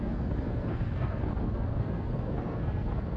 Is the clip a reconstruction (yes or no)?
yes